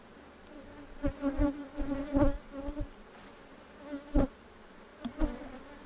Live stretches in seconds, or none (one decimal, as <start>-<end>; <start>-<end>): 0.0-5.9